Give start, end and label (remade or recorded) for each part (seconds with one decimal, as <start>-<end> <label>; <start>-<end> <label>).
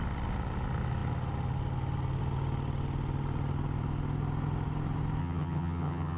0.0-5.2 recorded; 5.2-6.2 remade